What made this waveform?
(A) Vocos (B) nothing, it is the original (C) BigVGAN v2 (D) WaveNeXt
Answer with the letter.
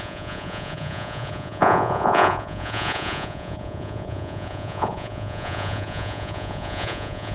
A